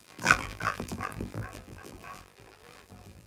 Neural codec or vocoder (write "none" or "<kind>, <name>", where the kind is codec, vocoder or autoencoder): vocoder, BigVGAN v2